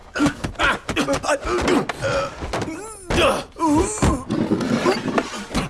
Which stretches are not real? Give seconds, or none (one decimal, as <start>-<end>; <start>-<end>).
0.0-0.6